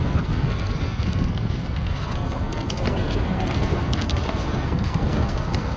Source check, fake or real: fake